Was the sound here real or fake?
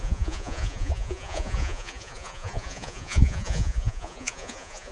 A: fake